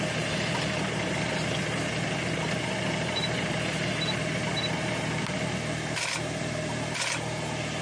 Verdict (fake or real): real